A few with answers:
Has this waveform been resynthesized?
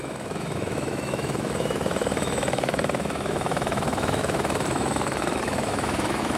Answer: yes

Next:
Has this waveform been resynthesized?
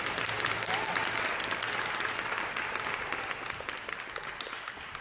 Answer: no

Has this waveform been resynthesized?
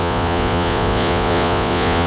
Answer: yes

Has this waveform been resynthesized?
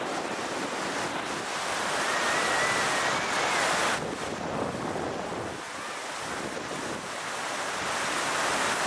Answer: no